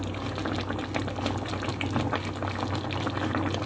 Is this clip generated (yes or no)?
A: no